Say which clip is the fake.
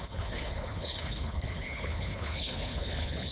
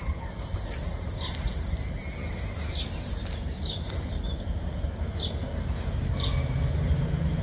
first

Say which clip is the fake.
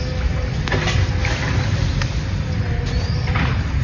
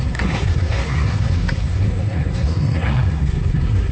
second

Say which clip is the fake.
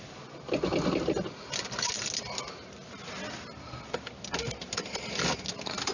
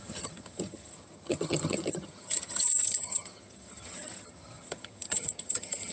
second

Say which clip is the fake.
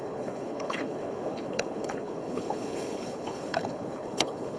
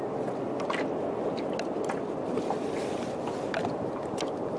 first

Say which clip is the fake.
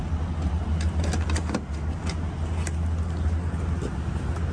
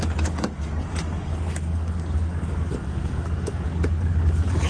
second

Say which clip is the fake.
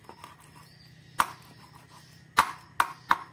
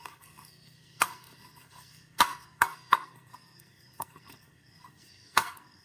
second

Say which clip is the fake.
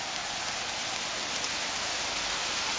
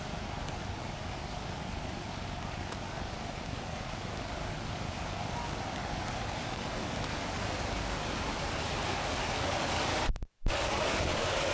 second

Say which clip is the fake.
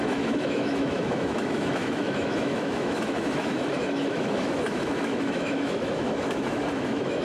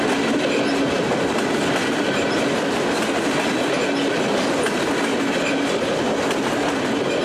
first